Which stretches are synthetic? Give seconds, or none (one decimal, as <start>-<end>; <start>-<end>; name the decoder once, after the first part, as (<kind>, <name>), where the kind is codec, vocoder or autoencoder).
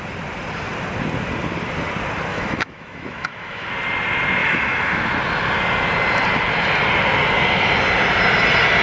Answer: 2.3-3.7 (autoencoder, DAC-VAE); 4.4-5.1